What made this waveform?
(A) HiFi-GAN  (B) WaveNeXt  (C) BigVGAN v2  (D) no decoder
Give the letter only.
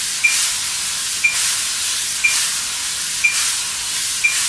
D